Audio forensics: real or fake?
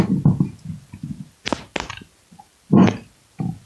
real